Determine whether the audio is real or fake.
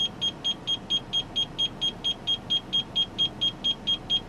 real